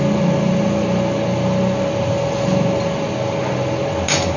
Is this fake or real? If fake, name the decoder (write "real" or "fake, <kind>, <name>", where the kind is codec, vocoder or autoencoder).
real